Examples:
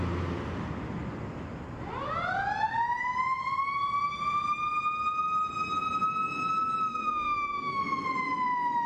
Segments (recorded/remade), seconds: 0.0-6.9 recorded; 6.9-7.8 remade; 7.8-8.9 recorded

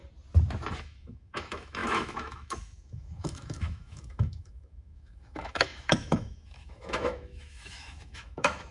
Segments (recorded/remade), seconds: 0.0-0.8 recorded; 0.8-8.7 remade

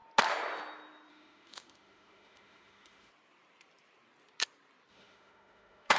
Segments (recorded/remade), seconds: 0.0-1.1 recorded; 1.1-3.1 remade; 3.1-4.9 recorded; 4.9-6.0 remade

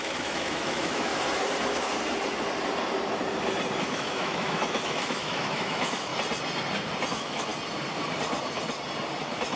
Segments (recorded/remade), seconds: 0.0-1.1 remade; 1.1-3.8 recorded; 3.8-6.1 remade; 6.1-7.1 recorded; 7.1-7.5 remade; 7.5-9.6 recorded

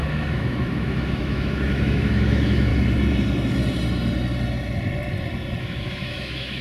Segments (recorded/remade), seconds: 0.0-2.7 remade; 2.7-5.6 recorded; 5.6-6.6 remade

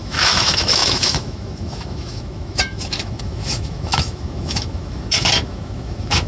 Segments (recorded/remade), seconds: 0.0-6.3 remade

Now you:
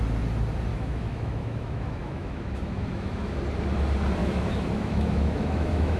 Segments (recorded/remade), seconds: 0.0-0.7 recorded; 0.7-3.4 remade; 3.4-4.2 recorded; 4.2-6.0 remade